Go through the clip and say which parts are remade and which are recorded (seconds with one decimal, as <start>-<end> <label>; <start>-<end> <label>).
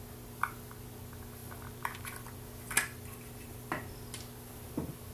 0.0-5.1 recorded